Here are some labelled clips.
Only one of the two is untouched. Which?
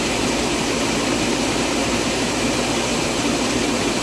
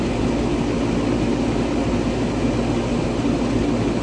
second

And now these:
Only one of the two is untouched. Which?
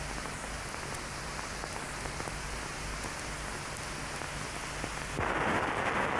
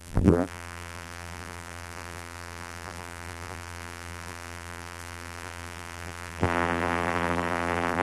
first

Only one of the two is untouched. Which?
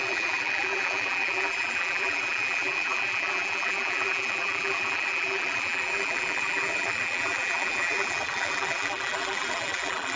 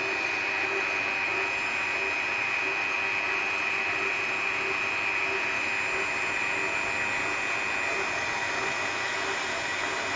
second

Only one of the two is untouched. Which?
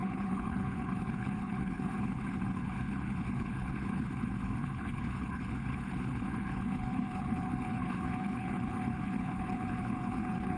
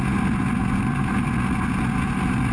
second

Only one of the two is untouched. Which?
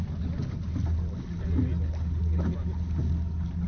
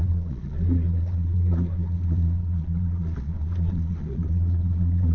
first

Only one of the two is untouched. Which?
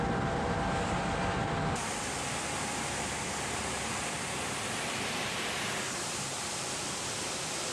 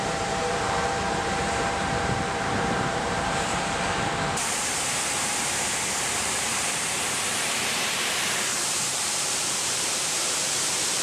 first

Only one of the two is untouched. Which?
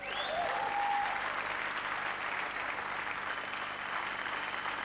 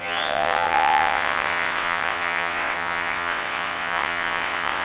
first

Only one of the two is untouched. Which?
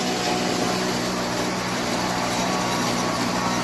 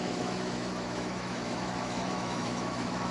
first